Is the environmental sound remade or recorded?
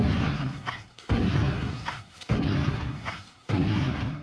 remade